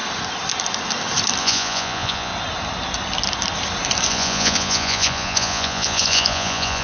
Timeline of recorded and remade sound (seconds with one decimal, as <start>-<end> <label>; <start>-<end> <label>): 0.0-1.4 recorded; 1.4-2.3 remade; 2.3-4.1 recorded; 4.1-6.8 remade